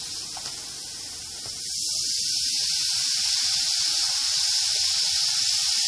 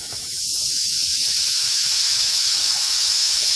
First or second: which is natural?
first